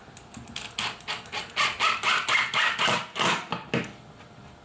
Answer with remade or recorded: recorded